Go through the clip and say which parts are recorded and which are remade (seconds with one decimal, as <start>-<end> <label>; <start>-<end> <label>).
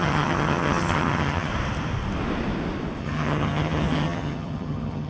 0.0-1.5 remade; 1.5-3.0 recorded; 3.0-5.1 remade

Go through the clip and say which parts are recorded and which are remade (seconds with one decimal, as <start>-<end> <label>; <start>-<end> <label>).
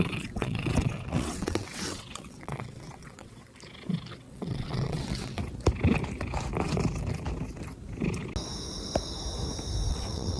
0.0-3.4 remade; 3.4-4.1 recorded; 4.1-5.4 remade; 5.4-9.9 recorded; 9.9-10.4 remade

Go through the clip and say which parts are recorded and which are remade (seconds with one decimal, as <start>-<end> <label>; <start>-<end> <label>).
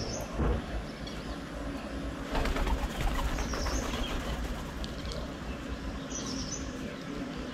0.0-3.5 recorded; 3.5-7.5 remade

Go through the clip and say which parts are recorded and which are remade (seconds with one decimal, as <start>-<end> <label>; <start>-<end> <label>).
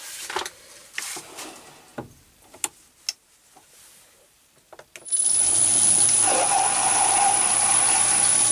0.0-1.9 remade; 1.9-6.5 recorded; 6.5-8.5 remade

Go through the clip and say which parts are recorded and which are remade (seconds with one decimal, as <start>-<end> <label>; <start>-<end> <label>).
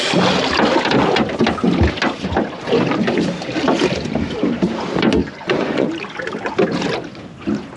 0.0-5.2 recorded; 5.2-5.9 remade; 5.9-7.8 recorded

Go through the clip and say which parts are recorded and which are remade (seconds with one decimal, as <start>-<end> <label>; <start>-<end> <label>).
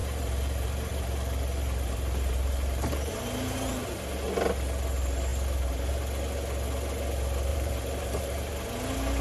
0.0-3.1 remade; 3.1-7.5 recorded; 7.5-8.5 remade; 8.5-9.2 recorded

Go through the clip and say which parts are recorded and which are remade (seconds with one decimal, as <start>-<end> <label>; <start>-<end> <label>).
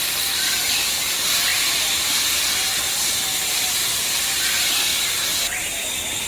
0.0-6.3 recorded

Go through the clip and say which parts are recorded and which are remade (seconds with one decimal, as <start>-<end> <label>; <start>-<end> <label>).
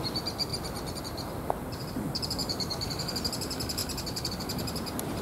0.0-2.4 recorded; 2.4-3.1 remade; 3.1-5.2 recorded